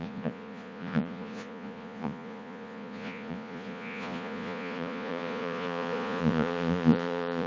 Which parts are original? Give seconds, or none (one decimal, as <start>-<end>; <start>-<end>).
none